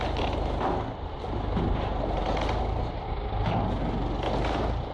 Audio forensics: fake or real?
real